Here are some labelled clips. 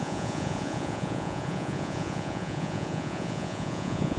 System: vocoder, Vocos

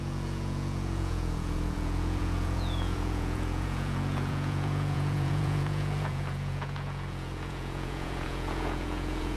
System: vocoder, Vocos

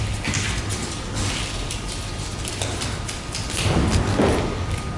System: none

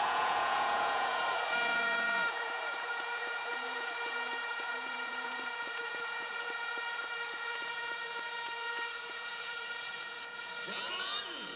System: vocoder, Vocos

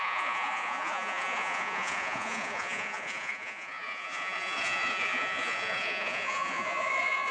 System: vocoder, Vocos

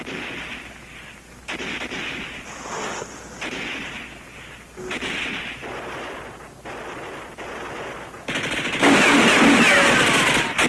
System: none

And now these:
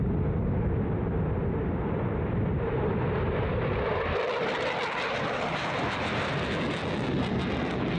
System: none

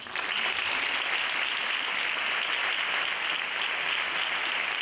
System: none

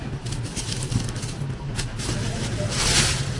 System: none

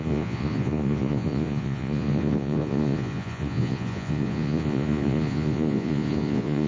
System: vocoder, Vocos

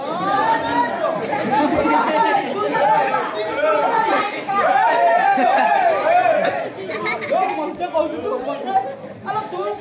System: none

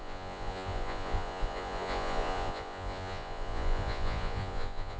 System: vocoder, Vocos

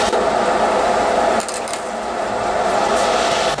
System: none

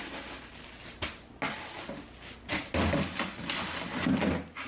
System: none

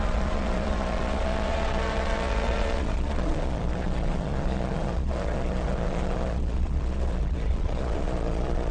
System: vocoder, Vocos